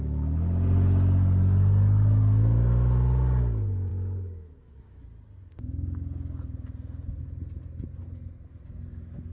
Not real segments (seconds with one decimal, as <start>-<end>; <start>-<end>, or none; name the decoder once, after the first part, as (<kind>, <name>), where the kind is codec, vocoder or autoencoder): 3.9-5.0 (autoencoder, DAC-VAE)